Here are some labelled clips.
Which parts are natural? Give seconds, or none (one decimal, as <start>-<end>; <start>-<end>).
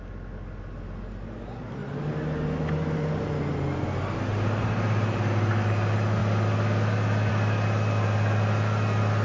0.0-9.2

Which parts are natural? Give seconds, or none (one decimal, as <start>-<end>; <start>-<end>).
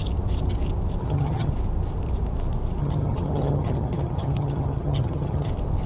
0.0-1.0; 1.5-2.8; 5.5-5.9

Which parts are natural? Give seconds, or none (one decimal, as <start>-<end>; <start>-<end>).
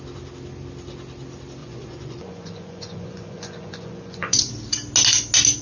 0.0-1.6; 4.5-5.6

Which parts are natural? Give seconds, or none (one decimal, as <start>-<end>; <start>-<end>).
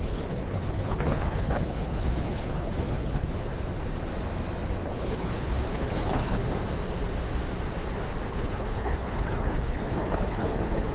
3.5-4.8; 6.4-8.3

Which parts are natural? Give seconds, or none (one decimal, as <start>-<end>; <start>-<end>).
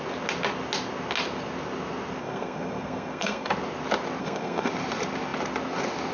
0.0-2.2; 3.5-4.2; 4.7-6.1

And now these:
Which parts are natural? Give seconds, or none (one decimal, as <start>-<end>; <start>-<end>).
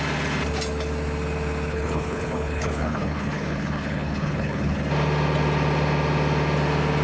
0.0-1.7; 4.8-7.0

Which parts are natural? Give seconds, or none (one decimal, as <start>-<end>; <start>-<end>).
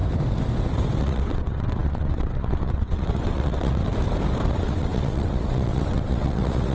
0.0-1.0; 3.8-4.5